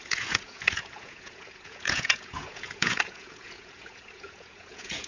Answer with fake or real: fake